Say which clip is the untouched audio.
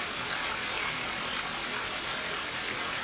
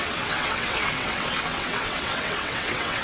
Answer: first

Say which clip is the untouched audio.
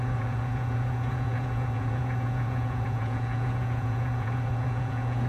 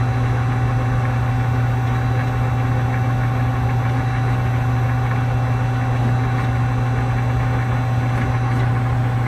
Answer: second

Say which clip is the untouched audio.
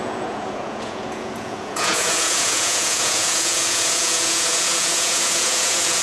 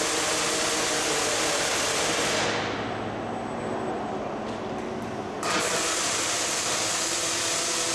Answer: second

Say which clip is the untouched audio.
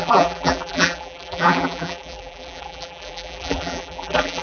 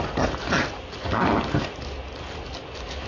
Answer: second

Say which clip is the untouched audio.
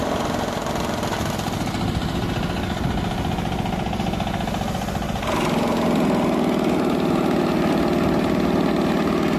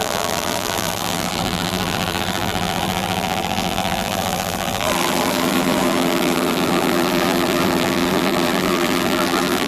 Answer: first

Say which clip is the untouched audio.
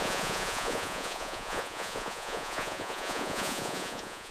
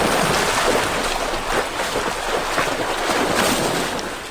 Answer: second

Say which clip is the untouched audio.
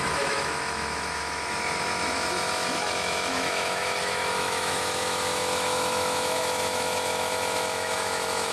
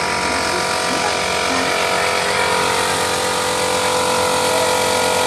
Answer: second